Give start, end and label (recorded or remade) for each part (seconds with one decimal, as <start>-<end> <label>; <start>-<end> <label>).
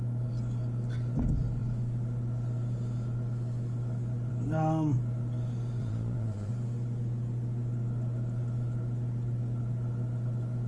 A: 0.0-5.8 recorded; 5.8-6.5 remade; 6.5-10.7 recorded